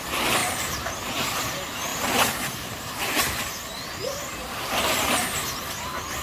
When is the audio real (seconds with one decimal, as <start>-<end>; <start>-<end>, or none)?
0.0-0.4; 1.4-1.9; 3.2-4.0; 4.7-6.2